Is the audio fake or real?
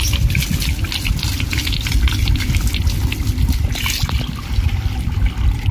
real